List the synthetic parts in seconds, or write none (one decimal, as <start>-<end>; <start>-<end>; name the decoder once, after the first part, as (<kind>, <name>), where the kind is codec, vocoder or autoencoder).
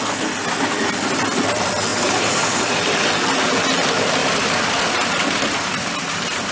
1.9-3.1 (vocoder, BigVGAN v2); 4.2-6.5